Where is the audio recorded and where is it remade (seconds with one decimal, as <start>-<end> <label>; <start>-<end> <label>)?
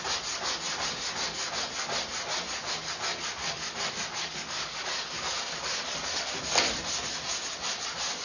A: 0.0-3.4 recorded; 3.4-6.3 remade; 6.3-8.2 recorded